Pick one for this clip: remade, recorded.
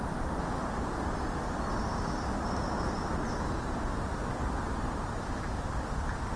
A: recorded